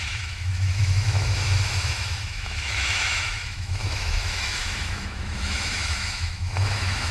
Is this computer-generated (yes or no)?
yes